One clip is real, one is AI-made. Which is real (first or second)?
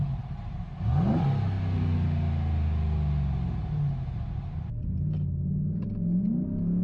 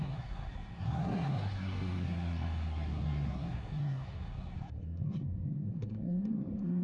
first